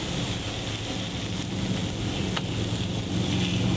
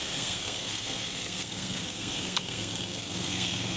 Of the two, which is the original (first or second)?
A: first